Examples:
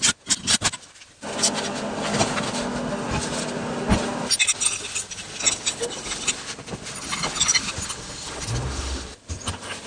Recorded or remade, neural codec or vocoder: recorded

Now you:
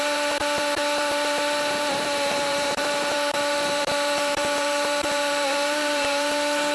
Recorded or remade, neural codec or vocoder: remade, vocoder, BigVGAN v2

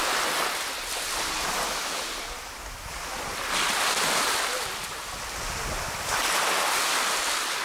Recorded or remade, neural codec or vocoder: recorded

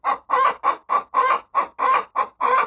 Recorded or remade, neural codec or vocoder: remade, vocoder, BigVGAN v2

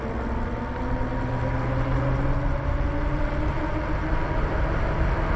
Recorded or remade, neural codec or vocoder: recorded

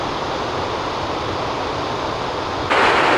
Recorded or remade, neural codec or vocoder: recorded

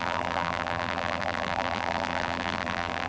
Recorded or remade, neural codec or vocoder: remade, vocoder, BigVGAN v2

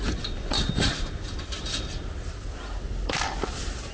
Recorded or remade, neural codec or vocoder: recorded